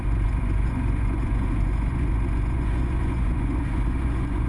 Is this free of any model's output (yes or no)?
no